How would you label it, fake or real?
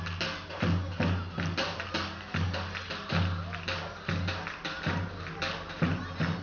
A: real